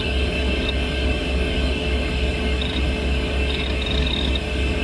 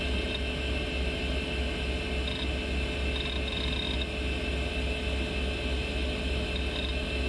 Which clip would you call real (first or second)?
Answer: second